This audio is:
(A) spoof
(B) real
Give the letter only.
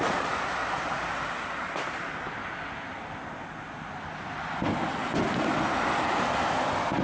B